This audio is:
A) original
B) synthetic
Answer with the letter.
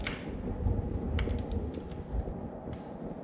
A